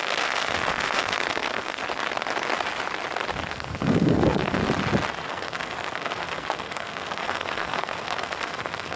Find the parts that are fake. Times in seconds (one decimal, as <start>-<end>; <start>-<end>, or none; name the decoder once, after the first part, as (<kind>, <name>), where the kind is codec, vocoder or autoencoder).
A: 0.0-1.8 (codec, SNAC); 3.5-4.6; 5.3-9.0